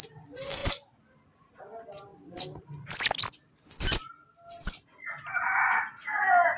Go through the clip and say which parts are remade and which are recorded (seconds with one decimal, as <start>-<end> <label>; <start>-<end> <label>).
0.0-6.6 recorded